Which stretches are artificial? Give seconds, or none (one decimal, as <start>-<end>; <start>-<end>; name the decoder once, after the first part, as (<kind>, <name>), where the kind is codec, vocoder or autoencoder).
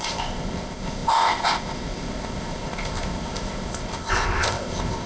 0.0-5.1 (codec, ZipCodec)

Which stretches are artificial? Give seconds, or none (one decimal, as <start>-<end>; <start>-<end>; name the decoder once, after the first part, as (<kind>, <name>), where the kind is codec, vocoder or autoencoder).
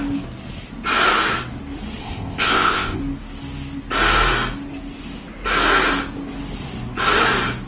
2.0-3.0 (codec, ZipCodec)